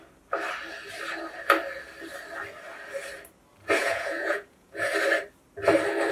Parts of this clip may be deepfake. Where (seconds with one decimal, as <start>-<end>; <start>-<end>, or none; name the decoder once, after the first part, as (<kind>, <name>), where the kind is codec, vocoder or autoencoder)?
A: 3.8-4.9 (vocoder, Vocos)